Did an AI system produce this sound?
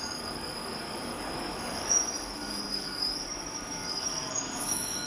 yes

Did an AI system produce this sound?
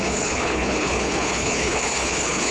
yes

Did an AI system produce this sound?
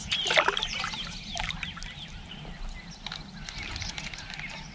no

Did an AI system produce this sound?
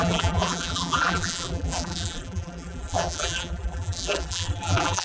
yes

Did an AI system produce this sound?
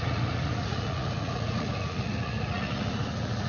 yes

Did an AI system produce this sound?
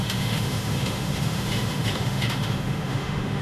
yes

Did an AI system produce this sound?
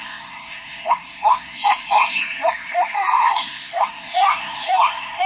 yes